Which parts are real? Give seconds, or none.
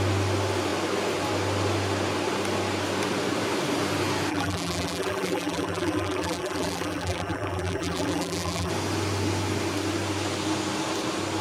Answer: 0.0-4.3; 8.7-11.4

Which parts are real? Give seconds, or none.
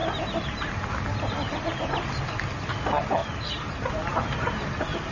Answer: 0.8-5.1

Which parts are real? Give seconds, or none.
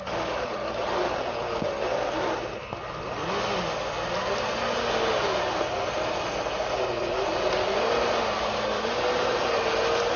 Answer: 0.0-10.2